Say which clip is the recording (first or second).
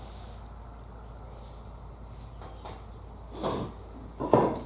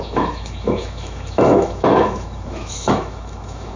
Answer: first